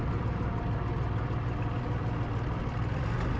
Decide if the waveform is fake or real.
real